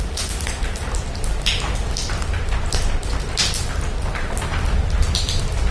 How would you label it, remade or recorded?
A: recorded